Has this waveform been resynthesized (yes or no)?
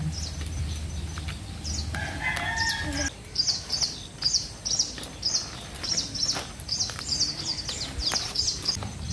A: no